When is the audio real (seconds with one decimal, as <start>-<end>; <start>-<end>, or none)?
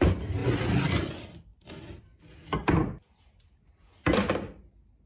0.0-5.1